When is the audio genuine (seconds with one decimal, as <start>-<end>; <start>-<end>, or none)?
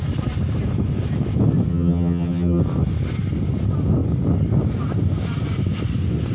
0.0-1.7; 2.6-6.3